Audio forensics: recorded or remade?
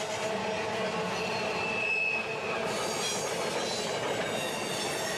recorded